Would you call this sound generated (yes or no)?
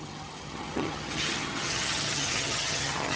yes